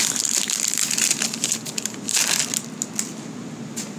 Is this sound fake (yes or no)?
no